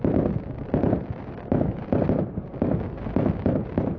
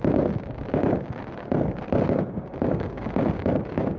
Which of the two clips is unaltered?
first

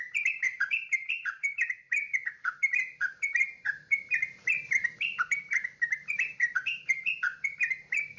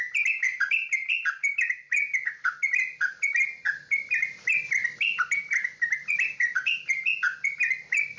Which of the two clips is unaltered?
second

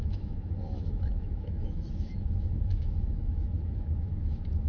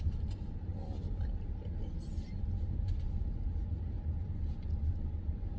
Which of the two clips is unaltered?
second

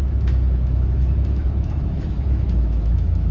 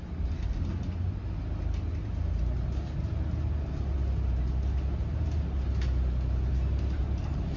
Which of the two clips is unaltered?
second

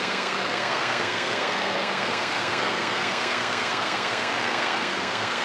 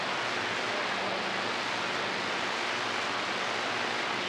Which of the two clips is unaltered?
second